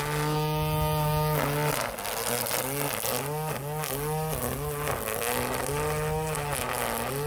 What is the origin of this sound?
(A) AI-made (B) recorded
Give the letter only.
B